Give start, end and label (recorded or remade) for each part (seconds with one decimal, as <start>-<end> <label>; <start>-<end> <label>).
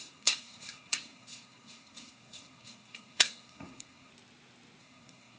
0.0-4.1 remade; 4.1-4.8 recorded; 4.8-5.4 remade